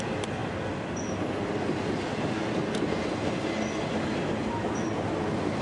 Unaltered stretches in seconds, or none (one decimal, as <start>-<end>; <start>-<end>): 0.0-5.6